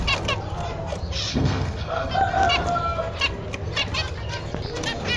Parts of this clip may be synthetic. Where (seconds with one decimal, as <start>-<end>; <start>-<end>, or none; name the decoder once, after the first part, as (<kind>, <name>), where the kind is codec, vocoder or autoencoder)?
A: 1.3-2.1 (codec, SNAC)